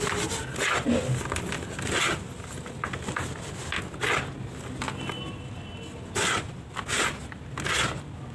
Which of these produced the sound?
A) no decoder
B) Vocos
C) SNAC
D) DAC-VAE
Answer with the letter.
A